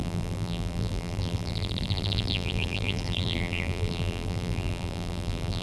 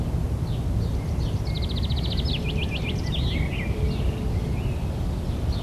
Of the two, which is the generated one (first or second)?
first